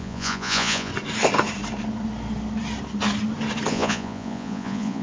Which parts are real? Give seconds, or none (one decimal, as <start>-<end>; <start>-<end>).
0.9-3.7